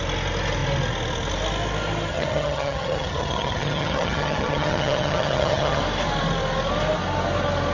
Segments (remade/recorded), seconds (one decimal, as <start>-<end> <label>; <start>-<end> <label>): 0.0-2.1 recorded; 2.1-5.8 remade; 5.8-7.7 recorded